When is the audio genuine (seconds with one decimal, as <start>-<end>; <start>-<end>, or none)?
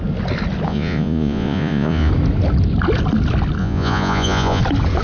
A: 0.0-0.7; 2.1-3.6; 4.6-5.0